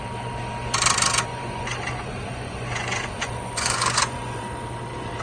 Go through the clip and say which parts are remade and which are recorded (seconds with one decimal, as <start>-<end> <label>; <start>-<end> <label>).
0.0-1.3 recorded; 1.3-4.4 remade; 4.4-5.2 recorded